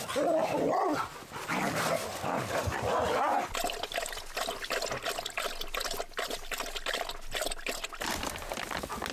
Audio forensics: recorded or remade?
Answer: recorded